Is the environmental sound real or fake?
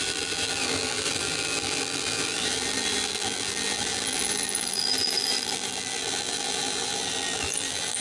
fake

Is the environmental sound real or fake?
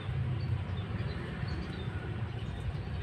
fake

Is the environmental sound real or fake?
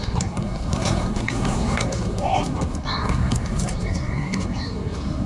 fake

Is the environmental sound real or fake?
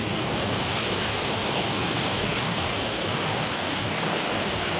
fake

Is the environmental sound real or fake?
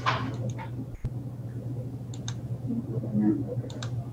real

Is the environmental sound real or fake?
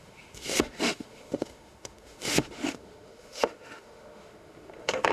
fake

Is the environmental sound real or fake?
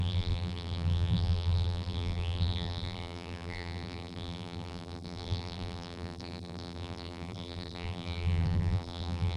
fake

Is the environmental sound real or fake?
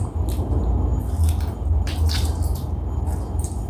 real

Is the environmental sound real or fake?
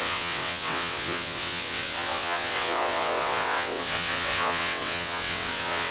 fake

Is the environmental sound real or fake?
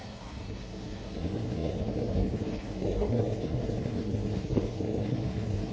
fake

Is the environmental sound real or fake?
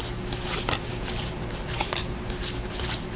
real